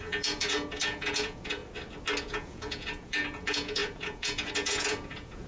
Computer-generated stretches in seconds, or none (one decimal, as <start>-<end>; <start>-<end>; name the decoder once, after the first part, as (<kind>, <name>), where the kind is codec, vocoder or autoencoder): 0.0-1.6 (vocoder, Vocos); 2.2-5.5